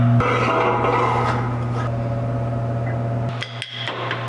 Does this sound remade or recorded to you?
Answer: recorded